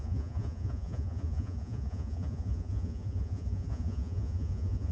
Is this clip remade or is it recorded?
remade